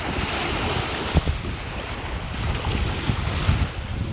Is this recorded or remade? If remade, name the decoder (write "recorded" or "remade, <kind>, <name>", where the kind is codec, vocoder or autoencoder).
recorded